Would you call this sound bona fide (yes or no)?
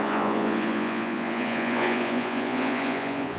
no